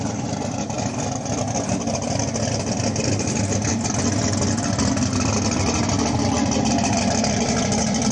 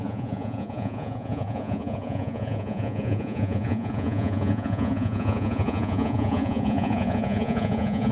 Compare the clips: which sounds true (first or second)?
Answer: first